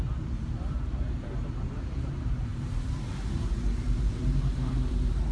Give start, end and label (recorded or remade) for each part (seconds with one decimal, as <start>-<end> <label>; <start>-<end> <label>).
0.0-5.3 remade